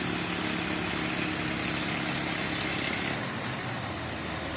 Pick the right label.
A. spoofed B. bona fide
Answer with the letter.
B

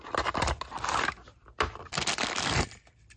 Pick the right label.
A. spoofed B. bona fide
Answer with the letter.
B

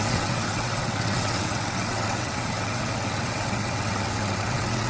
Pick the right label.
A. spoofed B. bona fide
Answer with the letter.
A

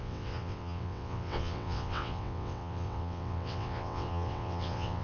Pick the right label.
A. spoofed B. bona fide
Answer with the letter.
A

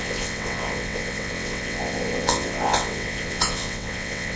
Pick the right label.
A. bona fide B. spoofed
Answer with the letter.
B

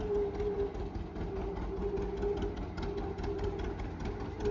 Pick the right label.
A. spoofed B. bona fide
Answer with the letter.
B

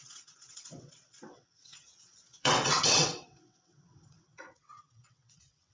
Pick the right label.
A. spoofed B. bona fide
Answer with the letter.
A